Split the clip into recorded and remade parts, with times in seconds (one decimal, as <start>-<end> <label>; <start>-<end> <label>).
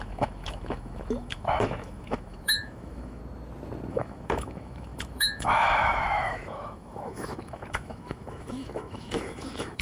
0.0-3.2 remade; 3.2-3.9 recorded; 3.9-9.8 remade